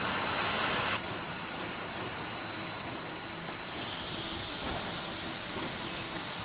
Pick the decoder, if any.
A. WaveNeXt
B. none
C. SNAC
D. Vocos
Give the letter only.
B